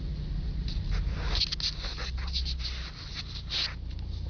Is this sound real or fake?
real